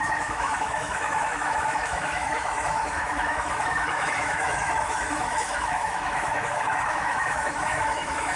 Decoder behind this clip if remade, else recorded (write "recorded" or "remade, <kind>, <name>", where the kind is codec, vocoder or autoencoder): remade, autoencoder, DAC-VAE